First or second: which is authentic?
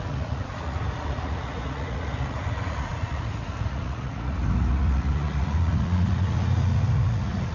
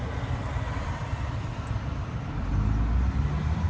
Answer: second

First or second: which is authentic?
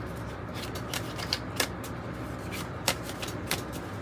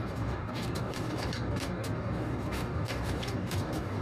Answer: first